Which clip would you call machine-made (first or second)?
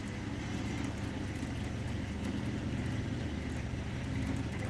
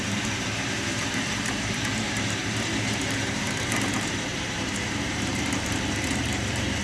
second